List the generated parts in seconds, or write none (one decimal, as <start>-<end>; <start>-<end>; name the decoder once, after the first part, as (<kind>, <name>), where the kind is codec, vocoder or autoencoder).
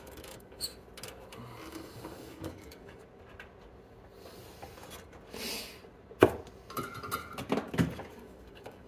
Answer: 0.0-0.7 (codec, DAC); 1.7-3.0; 8.1-8.9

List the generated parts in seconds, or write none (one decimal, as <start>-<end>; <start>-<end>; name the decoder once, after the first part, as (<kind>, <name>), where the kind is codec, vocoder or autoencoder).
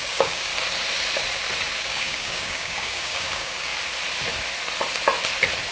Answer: 0.0-0.5 (codec, DAC); 1.8-3.7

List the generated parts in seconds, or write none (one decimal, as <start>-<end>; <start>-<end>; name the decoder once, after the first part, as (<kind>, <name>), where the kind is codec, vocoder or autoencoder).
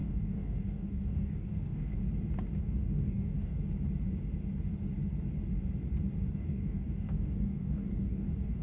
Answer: 0.0-2.0 (codec, DAC); 2.6-3.5; 6.3-8.6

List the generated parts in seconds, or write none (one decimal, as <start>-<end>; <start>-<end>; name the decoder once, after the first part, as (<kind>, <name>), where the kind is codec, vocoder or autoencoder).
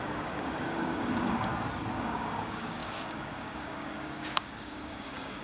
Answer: 0.0-1.5 (codec, DAC); 2.0-5.4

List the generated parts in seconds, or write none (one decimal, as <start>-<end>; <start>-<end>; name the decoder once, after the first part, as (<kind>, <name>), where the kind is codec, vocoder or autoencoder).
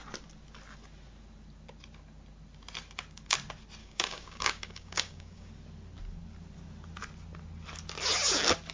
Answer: 3.8-5.5 (codec, DAC)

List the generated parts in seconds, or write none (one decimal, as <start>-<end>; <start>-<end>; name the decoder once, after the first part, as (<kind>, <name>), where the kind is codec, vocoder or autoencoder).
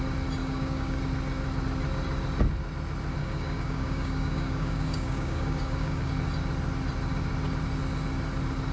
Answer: 0.4-1.0 (codec, DAC); 3.2-6.1